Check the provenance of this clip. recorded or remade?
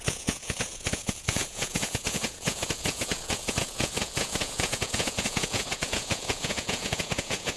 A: remade